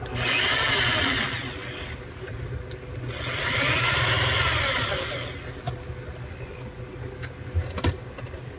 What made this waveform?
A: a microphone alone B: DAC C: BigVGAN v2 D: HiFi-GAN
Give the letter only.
A